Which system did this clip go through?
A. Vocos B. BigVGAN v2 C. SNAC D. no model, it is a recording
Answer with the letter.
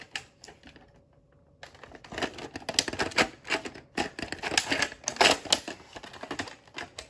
D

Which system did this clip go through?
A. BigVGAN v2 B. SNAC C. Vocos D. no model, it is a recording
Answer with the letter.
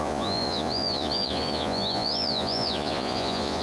C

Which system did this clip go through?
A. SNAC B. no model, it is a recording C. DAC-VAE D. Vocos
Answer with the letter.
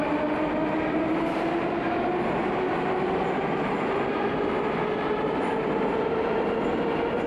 B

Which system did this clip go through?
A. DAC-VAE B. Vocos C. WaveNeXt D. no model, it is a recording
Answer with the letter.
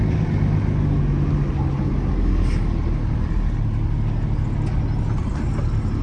D